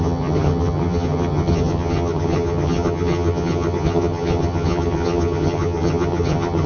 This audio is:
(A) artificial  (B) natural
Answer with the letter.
A